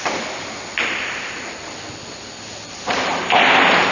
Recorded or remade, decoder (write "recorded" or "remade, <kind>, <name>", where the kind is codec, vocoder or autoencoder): recorded